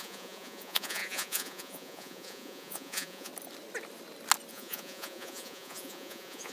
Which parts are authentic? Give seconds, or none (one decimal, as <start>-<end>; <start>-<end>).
3.3-4.5